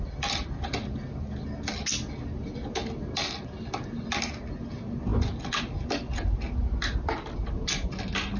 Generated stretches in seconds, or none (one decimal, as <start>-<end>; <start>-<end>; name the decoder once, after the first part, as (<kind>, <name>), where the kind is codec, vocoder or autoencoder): none